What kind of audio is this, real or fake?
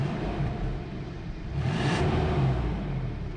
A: real